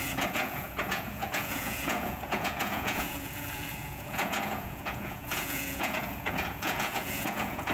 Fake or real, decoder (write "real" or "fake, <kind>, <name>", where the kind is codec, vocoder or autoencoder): fake, vocoder, Vocos